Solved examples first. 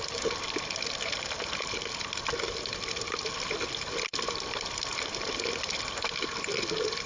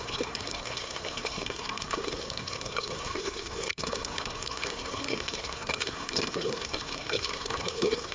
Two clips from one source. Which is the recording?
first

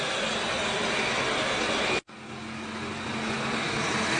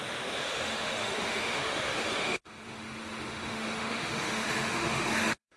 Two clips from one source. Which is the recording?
first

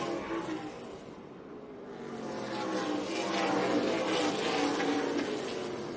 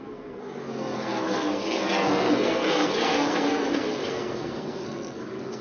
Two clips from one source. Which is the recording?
first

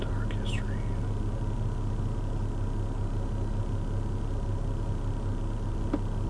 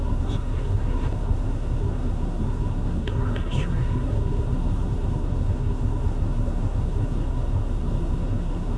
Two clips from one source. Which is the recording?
first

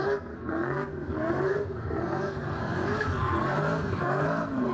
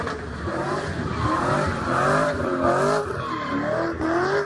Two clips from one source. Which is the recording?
second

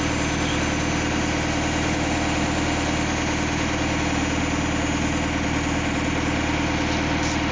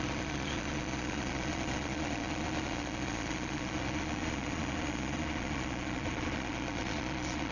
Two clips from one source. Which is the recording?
first